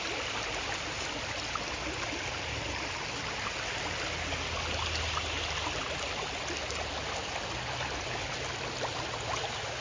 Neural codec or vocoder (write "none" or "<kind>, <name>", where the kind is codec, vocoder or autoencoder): none